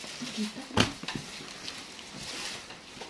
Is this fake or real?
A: real